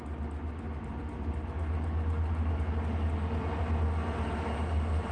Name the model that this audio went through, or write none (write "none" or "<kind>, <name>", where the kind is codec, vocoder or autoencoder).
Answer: none